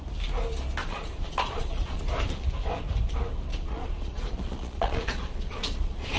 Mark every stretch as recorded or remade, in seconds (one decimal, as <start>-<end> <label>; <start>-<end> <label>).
0.0-0.8 recorded; 0.8-2.0 remade; 2.0-3.5 recorded; 3.5-6.2 remade